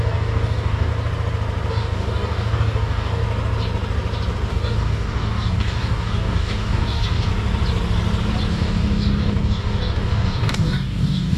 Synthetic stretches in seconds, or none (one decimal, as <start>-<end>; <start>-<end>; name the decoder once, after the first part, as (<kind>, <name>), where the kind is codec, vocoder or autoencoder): 0.0-0.9 (codec, DAC); 1.7-3.2; 4.5-7.3; 8.5-11.4